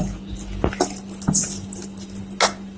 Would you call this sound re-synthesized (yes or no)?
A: no